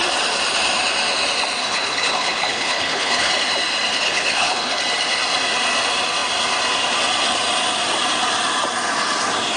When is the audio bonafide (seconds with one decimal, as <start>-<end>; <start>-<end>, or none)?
0.0-1.6; 3.3-3.9; 4.8-9.6